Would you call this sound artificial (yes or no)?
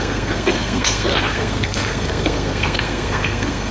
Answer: yes